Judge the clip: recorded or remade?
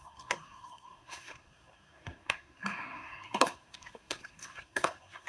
remade